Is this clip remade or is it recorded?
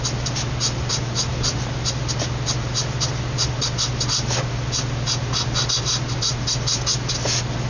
recorded